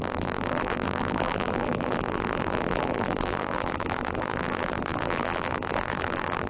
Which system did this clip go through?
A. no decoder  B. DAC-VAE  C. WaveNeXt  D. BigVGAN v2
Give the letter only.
D